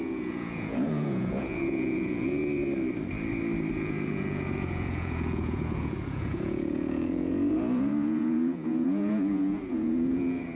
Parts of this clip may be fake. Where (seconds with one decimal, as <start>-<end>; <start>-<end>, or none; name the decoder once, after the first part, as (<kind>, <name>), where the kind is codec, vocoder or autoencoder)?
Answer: 0.0-2.4 (vocoder, Vocos); 3.7-10.6